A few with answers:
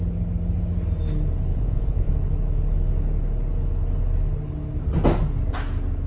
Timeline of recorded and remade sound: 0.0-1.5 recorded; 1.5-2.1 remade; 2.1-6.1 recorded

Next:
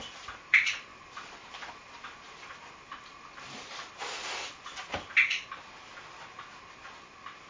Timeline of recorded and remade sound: 0.0-7.5 recorded